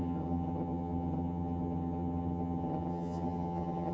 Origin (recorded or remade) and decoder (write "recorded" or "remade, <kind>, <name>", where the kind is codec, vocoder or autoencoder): remade, vocoder, HiFi-GAN